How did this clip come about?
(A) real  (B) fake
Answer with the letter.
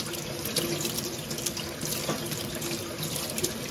A